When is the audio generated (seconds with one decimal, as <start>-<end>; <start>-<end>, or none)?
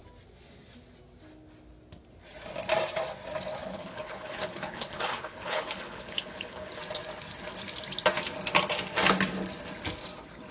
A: 3.6-6.8